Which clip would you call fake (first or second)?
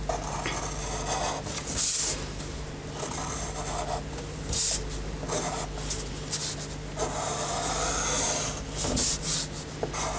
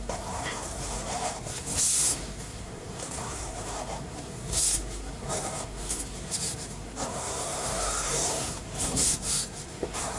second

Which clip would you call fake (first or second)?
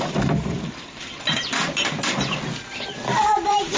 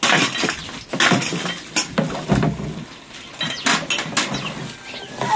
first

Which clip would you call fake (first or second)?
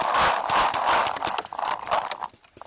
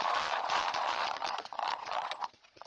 second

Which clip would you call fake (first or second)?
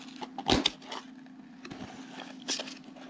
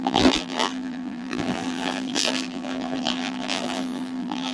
second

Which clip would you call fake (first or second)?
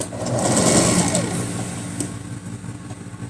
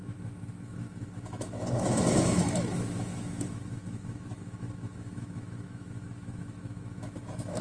second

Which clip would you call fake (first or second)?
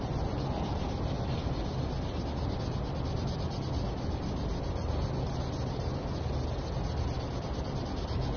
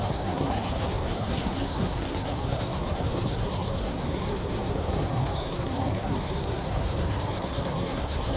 second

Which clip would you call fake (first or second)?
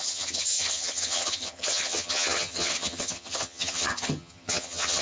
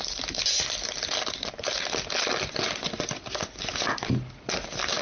first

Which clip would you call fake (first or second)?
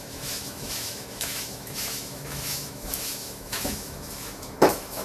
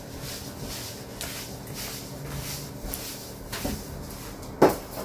first